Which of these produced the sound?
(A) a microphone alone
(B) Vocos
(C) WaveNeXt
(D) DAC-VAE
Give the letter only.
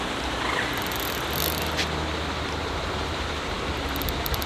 A